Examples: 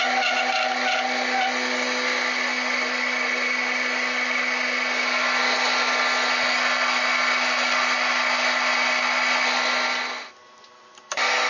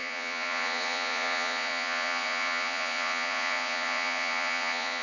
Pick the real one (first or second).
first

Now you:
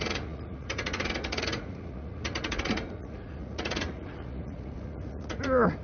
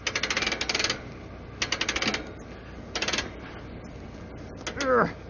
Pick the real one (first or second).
second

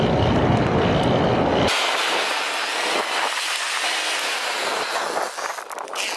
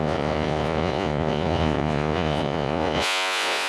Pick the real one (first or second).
first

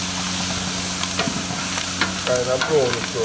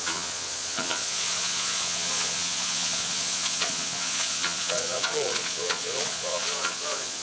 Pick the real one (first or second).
first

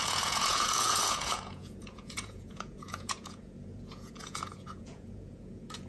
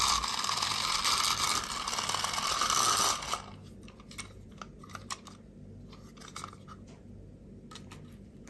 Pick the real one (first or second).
second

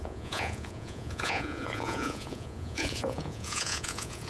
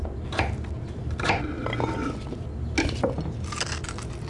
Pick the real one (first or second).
second